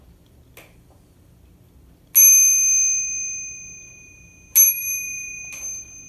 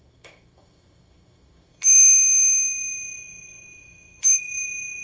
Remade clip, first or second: second